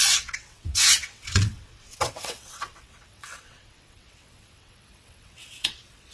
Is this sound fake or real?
fake